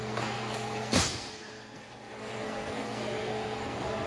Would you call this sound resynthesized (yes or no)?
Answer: yes